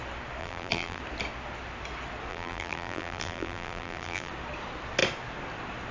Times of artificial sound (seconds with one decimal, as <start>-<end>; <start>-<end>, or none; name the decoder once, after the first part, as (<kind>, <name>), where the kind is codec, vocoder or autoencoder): 0.4-1.0 (vocoder, BigVGAN v2); 2.3-4.3